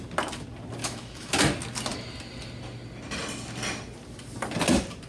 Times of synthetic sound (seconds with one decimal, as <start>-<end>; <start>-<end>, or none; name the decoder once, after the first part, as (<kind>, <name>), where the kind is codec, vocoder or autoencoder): 0.8-1.3 (autoencoder, DAC-VAE)